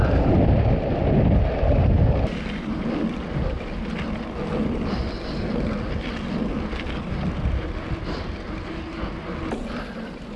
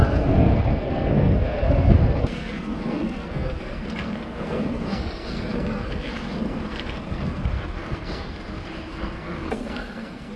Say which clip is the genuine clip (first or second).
first